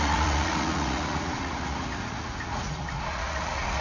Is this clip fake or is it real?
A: fake